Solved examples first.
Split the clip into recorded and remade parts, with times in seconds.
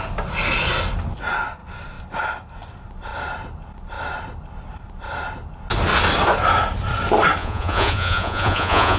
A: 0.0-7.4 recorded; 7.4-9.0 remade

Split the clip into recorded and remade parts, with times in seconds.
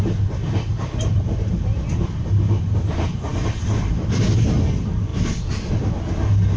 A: 0.0-0.7 recorded; 0.7-1.5 remade; 1.5-6.6 recorded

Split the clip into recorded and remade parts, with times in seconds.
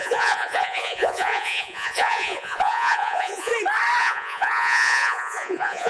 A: 0.0-3.5 remade; 3.5-4.0 recorded; 4.0-5.9 remade